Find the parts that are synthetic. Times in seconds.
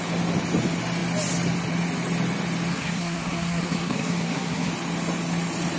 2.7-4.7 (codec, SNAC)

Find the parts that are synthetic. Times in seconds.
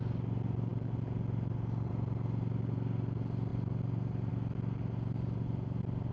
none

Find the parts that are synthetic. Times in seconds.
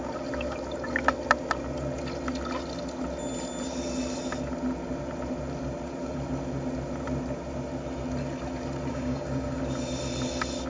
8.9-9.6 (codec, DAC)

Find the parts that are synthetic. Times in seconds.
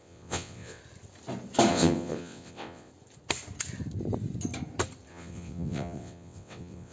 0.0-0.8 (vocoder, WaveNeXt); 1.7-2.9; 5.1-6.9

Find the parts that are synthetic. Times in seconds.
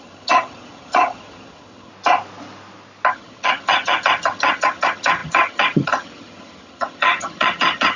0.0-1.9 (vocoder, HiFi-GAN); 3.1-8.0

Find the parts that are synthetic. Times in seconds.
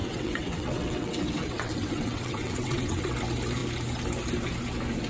0.0-3.1 (vocoder, WaveNeXt)